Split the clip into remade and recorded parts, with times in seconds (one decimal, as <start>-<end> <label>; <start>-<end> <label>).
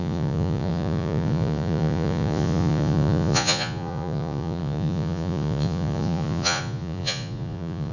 0.0-7.9 remade